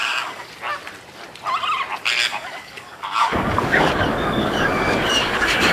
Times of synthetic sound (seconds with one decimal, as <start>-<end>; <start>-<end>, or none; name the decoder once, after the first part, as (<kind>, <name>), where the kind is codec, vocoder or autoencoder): 0.0-0.5 (codec, DAC); 2.3-5.7

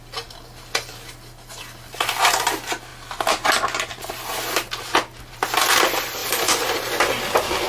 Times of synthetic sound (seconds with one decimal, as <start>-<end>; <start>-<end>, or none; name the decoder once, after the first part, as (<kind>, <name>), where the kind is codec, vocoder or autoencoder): 6.2-7.1 (vocoder, BigVGAN v2)

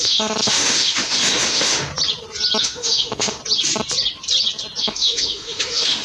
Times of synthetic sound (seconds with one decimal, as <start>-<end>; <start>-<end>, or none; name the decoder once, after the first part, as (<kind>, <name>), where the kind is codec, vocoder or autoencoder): 0.0-1.9 (autoencoder, DAC-VAE); 2.6-3.4; 4.8-6.0

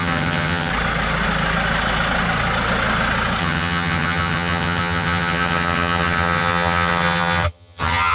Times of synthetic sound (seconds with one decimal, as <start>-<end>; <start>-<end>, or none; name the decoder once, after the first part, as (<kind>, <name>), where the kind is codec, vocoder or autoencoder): 0.0-0.7 (vocoder, HiFi-GAN); 3.4-8.1

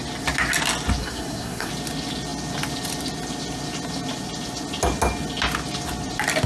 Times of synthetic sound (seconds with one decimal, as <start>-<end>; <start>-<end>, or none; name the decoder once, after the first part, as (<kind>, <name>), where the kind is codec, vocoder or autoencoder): 1.0-1.7 (codec, SNAC)

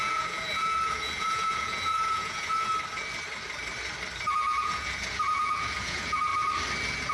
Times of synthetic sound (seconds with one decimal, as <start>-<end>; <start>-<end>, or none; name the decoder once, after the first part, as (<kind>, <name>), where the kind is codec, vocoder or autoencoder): 0.0-2.7 (vocoder, Vocos); 4.6-6.3

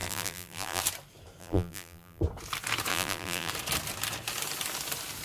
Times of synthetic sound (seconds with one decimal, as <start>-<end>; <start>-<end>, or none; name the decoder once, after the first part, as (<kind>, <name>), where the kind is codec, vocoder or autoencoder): 0.0-0.8 (vocoder, BigVGAN v2); 1.4-2.2; 2.9-3.5

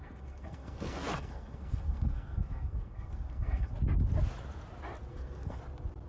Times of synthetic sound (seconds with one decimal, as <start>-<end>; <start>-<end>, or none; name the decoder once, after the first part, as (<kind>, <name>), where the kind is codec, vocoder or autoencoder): 0.0-3.7 (codec, SNAC); 5.1-5.6